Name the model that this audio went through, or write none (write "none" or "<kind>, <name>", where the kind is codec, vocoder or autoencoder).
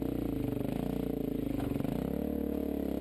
none